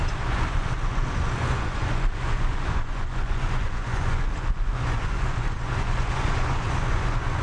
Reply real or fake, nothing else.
fake